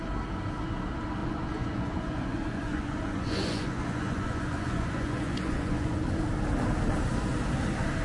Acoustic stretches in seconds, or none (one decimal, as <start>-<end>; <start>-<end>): 0.0-1.2; 6.0-8.0